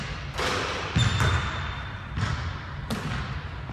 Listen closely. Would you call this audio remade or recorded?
recorded